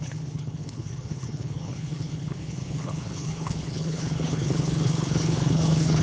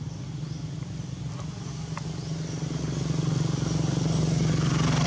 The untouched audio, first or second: second